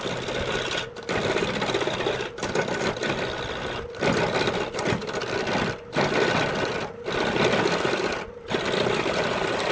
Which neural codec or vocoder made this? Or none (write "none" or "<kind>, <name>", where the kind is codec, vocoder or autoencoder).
none